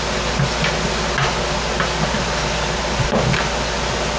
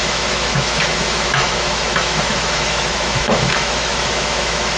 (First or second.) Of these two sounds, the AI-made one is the second